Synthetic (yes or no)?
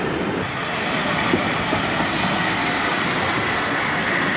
no